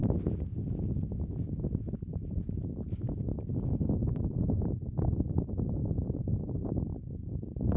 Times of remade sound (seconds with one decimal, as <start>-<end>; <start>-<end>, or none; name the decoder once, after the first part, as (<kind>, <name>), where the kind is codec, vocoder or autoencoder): none